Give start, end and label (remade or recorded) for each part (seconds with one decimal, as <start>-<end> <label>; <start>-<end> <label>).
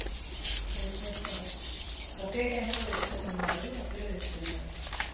0.0-0.8 remade; 0.8-1.5 recorded; 1.5-3.4 remade; 3.4-4.4 recorded; 4.4-5.1 remade